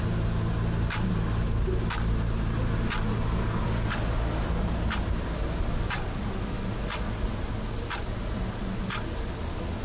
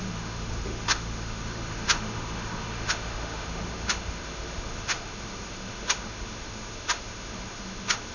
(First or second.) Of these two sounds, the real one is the first